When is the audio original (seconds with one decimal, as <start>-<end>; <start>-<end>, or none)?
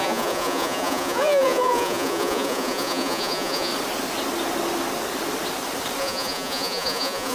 3.7-6.0